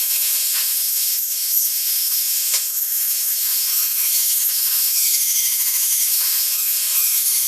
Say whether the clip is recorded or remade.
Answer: remade